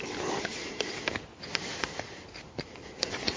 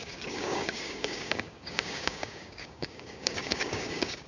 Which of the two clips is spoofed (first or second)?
second